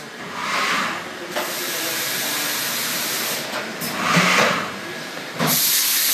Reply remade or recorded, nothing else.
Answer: remade